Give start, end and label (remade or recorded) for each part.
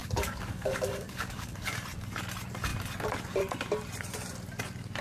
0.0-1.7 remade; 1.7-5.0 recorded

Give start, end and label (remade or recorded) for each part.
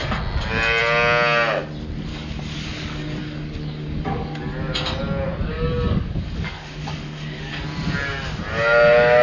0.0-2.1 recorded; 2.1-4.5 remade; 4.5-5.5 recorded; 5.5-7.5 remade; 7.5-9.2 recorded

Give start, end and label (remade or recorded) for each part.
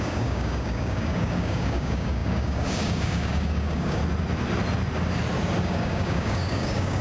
0.0-4.0 remade; 4.0-5.6 recorded; 5.6-7.0 remade